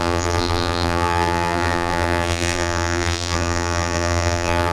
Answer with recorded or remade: remade